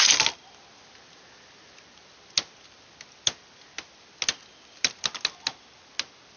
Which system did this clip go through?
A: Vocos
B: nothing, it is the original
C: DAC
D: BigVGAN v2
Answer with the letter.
B